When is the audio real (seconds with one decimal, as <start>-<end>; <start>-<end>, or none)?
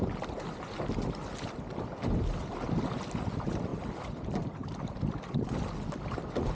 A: 0.0-3.7